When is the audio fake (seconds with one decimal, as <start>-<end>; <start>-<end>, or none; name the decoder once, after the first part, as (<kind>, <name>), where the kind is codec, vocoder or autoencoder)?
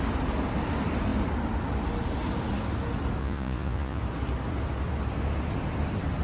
3.2-4.0 (vocoder, Vocos)